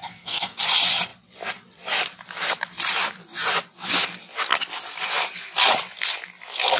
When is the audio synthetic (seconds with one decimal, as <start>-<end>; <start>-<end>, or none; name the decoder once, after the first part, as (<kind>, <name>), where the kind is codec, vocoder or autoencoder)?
0.0-0.6 (codec, SNAC)